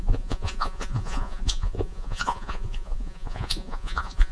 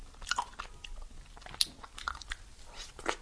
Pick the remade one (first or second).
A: first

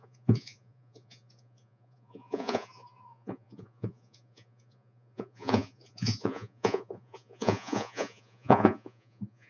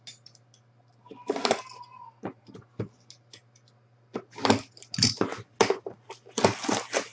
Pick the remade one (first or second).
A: first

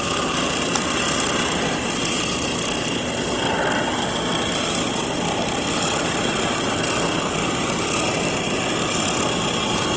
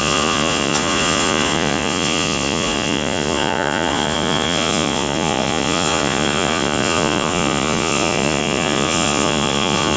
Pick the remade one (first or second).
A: second